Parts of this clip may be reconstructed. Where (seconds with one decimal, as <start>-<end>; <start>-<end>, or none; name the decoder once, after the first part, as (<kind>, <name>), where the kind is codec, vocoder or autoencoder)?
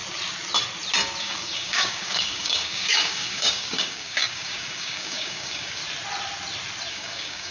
1.2-5.8 (codec, DAC); 6.9-7.5